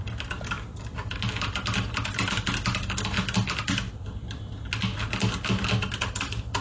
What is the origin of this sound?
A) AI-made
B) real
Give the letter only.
B